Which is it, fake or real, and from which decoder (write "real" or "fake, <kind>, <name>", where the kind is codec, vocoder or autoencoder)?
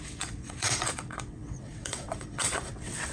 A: fake, vocoder, WaveNeXt